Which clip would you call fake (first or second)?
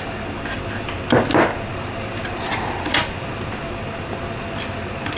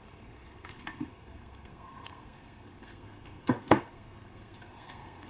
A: second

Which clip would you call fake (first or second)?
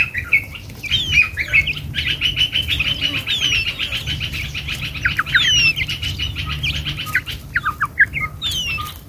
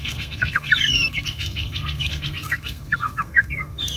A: second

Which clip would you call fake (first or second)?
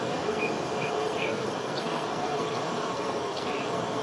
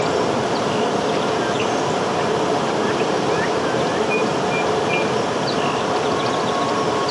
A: first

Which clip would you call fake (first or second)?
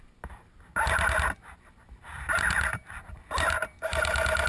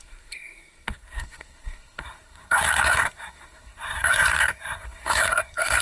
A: second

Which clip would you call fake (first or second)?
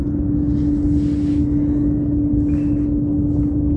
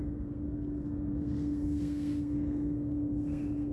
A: second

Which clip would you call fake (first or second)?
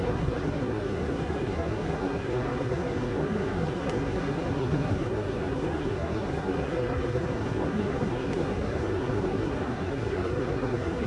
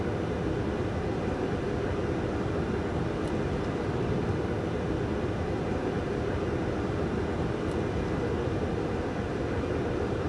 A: first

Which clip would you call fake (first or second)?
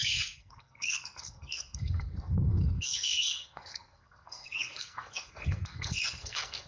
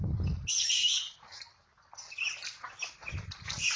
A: first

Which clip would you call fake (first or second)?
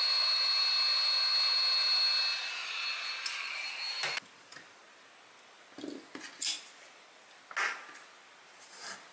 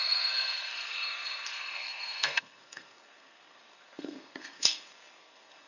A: second